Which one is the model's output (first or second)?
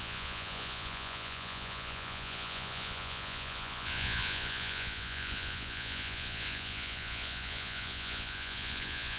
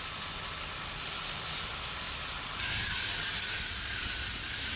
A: first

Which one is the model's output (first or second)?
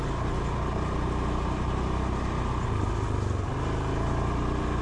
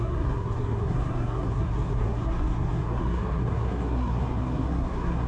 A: second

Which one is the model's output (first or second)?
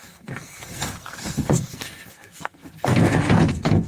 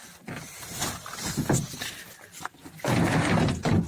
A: first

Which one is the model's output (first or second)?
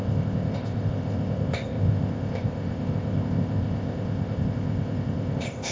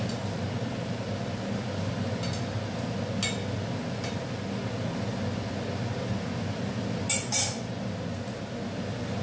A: first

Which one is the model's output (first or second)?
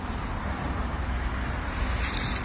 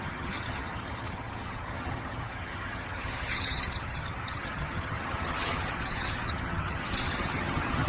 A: second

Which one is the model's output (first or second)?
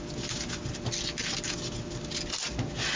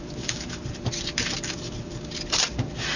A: second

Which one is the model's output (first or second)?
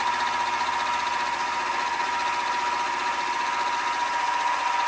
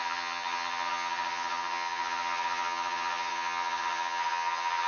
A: second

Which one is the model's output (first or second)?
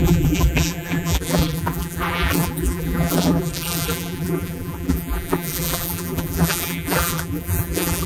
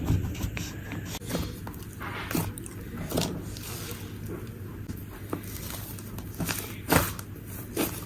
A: first